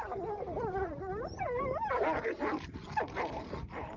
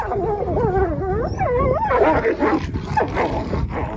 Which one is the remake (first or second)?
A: first